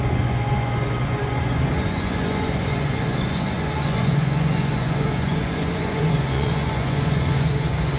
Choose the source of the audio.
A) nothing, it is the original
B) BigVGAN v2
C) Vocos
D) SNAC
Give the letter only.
C